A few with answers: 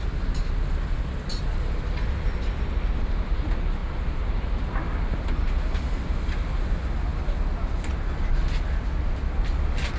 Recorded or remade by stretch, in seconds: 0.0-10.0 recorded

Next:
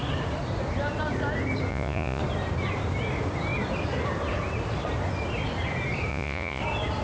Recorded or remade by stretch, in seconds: 0.0-1.7 recorded; 1.7-2.2 remade; 2.2-6.1 recorded; 6.1-6.6 remade; 6.6-7.0 recorded

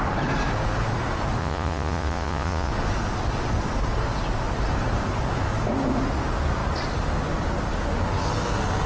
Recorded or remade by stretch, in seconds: 0.0-1.4 recorded; 1.4-2.7 remade; 2.7-8.9 recorded